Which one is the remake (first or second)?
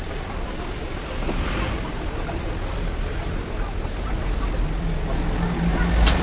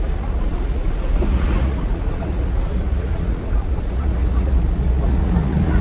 second